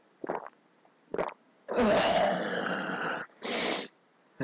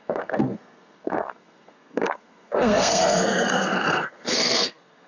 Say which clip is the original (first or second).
first